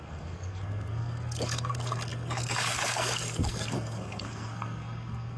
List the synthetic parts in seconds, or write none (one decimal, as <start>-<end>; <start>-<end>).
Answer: 0.0-5.4